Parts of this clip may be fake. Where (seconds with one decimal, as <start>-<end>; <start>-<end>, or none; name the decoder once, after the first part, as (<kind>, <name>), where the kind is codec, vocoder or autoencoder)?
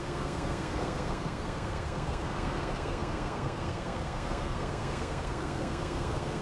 0.0-6.4 (codec, SNAC)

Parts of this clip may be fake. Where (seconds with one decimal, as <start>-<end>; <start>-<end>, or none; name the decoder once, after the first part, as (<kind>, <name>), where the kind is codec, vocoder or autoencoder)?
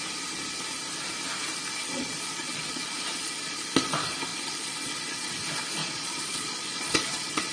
1.8-3.6 (vocoder, Vocos); 4.3-5.3; 5.8-7.5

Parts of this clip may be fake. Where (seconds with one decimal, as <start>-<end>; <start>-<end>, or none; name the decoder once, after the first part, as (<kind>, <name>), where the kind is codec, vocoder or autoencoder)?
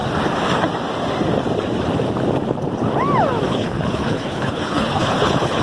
3.5-5.6 (codec, HILCodec)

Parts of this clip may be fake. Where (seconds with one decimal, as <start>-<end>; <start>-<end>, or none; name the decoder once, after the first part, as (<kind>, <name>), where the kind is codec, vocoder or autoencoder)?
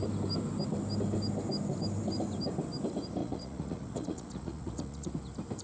3.2-5.1 (vocoder, Vocos)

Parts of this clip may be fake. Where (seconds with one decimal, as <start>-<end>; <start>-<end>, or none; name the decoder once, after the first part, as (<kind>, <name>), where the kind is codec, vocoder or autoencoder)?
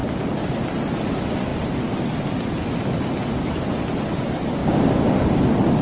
4.6-5.3 (codec, DAC)